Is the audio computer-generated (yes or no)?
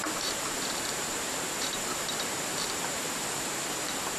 yes